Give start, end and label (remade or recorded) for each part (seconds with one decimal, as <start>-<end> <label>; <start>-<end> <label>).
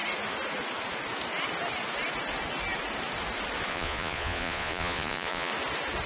0.0-3.7 recorded; 3.7-5.5 remade; 5.5-6.1 recorded